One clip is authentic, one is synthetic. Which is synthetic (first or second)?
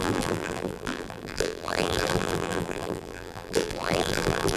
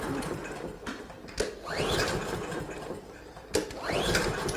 first